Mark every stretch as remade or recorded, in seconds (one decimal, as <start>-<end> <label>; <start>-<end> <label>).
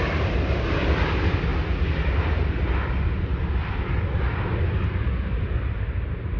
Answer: 0.0-6.4 recorded